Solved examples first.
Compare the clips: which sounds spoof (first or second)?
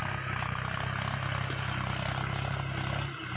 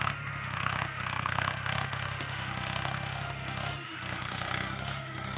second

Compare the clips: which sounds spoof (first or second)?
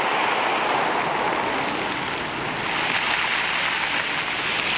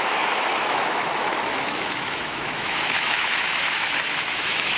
second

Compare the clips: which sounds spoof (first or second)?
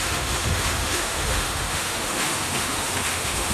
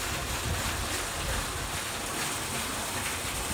first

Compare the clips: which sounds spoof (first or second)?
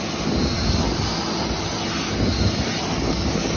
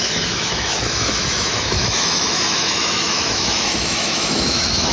second